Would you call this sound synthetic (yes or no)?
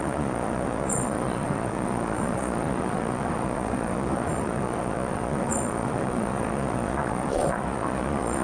yes